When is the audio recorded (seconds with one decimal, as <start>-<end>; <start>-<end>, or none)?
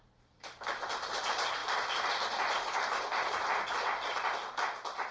0.0-5.1